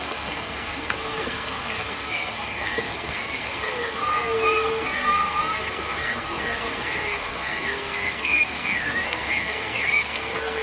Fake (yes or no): yes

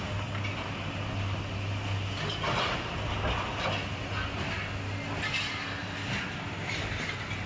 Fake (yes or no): no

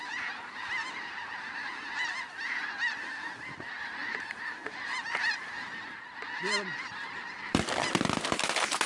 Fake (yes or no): no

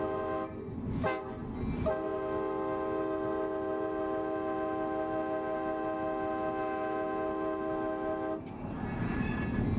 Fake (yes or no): no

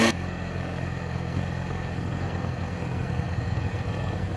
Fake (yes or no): yes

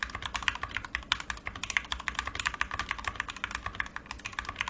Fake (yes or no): no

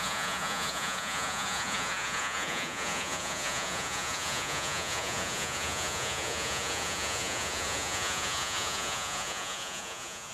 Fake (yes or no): yes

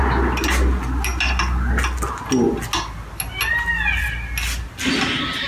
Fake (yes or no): no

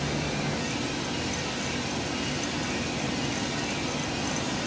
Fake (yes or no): no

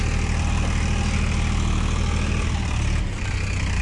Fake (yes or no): no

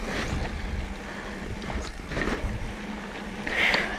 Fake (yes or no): no